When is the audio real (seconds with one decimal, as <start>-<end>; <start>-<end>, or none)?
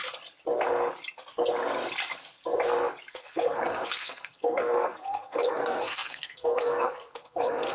0.0-3.1